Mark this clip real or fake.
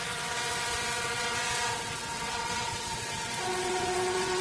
fake